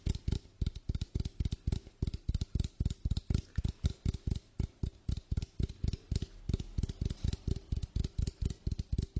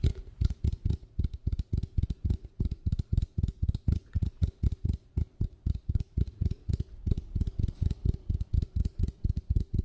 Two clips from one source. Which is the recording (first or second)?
first